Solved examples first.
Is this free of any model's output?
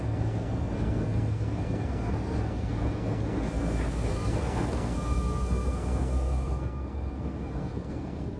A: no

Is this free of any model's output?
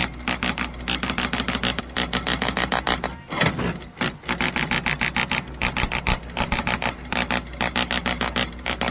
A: yes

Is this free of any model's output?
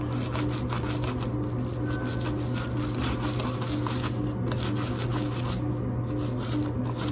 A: yes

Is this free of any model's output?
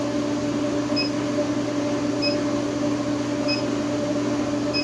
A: yes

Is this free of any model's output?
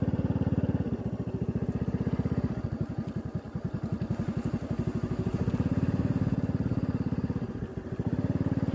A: yes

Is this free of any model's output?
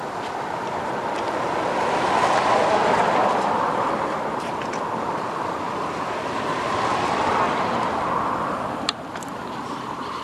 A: yes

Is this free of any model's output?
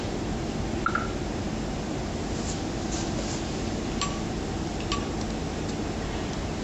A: yes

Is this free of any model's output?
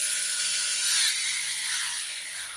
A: no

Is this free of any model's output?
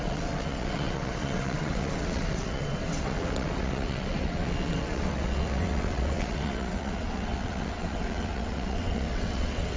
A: no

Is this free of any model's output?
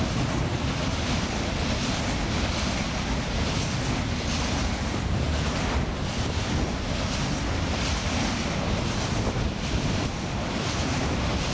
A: yes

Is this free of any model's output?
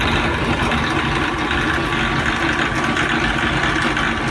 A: yes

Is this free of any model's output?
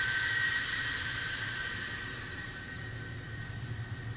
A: no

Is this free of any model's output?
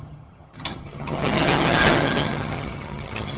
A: no